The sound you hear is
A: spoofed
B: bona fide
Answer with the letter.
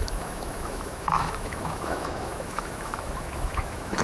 A